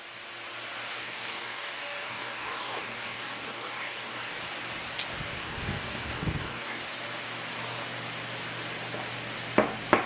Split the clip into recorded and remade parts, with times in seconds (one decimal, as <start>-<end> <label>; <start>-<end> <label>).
0.0-1.0 recorded; 1.0-4.4 remade; 4.4-5.4 recorded; 5.4-6.8 remade; 6.8-10.1 recorded